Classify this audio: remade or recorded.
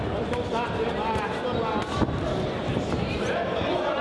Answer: recorded